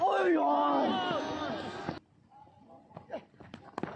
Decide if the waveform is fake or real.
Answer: real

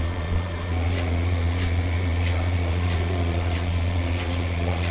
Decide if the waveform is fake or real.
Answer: fake